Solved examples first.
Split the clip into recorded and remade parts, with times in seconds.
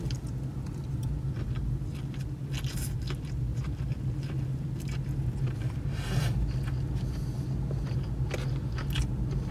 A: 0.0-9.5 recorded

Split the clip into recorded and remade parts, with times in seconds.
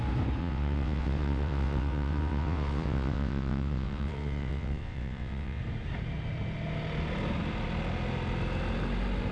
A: 0.0-0.4 recorded; 0.4-5.6 remade; 5.6-9.3 recorded